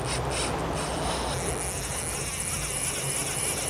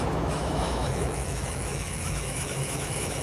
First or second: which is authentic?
first